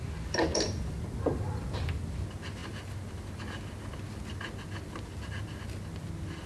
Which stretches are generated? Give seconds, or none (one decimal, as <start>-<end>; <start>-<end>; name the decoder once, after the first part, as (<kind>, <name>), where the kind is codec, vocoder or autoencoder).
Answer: none